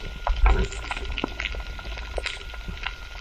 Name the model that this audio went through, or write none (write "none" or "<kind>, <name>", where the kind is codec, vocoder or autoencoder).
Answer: vocoder, BigVGAN v2